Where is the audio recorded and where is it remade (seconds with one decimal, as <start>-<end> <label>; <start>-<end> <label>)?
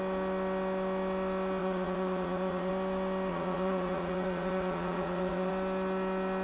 0.0-1.6 recorded; 1.6-2.7 remade; 2.7-3.3 recorded; 3.3-5.5 remade; 5.5-6.4 recorded